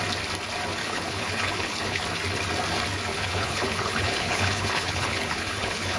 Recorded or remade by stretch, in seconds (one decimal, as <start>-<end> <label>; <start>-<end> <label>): 0.0-0.8 recorded; 0.8-2.0 remade; 2.0-3.1 recorded; 3.1-6.0 remade